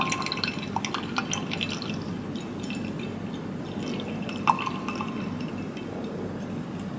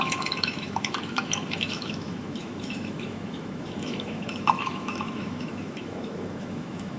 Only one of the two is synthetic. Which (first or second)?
second